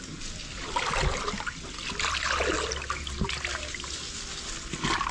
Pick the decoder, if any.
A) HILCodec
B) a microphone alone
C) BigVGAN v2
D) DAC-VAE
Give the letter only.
B